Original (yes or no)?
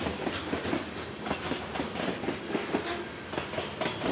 yes